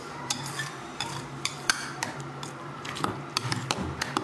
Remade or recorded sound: remade